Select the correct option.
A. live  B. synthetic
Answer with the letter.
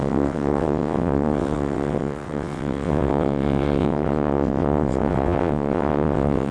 B